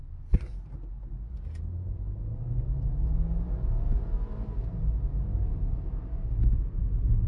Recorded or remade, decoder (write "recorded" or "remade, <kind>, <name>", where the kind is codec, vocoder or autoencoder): recorded